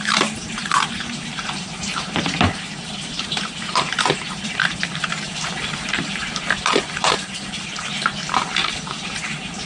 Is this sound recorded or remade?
remade